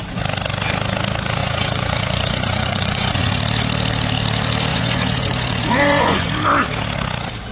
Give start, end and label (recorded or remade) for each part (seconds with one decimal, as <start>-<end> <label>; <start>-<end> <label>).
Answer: 0.0-1.4 recorded; 1.4-3.4 remade; 3.4-4.7 recorded; 4.7-6.3 remade; 6.3-7.5 recorded